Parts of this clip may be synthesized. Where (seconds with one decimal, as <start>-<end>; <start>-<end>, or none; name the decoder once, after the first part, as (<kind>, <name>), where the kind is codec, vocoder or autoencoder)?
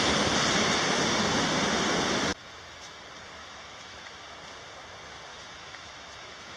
2.3-3.0 (autoencoder, DAC-VAE); 3.4-4.3; 5.3-6.6